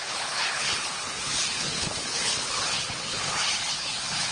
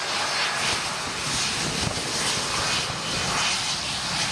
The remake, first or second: first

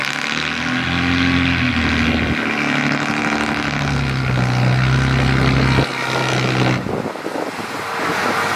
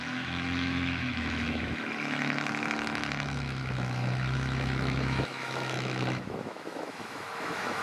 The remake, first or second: second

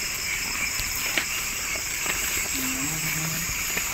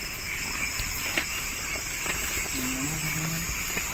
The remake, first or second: first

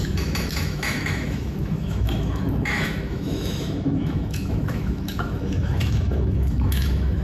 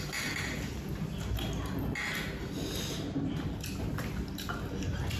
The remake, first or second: first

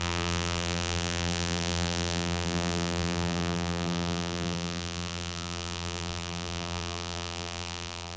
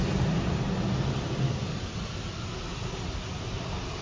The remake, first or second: first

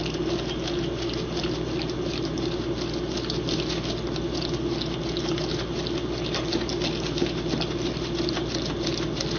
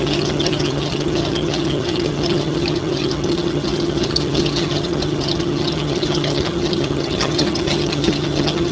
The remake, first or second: second